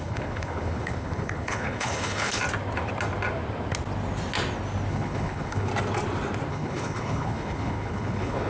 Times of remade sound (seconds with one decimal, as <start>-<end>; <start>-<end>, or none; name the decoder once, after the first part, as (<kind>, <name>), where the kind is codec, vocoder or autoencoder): 0.0-2.4 (codec, HILCodec); 4.9-5.7; 6.5-8.5